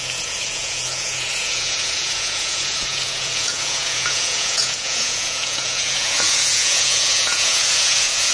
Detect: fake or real fake